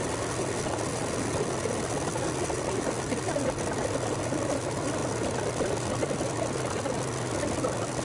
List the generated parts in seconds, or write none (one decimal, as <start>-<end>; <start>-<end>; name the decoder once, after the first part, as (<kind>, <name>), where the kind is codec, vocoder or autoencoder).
none